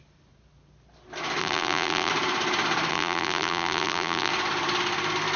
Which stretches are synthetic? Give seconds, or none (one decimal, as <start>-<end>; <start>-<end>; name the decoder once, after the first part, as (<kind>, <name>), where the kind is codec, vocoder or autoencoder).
1.4-2.1 (vocoder, BigVGAN v2); 2.9-4.3